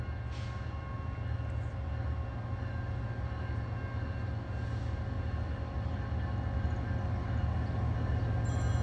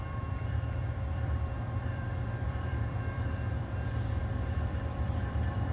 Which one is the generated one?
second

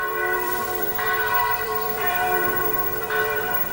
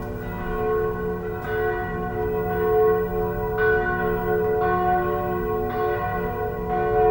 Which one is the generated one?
first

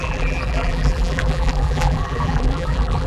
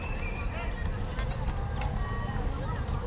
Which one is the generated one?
first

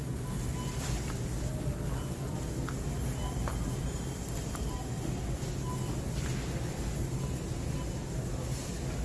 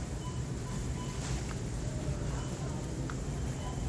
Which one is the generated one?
second